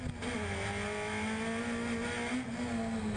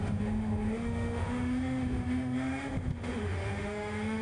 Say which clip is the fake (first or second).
second